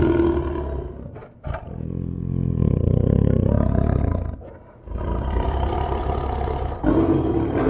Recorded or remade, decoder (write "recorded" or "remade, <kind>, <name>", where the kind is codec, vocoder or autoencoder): recorded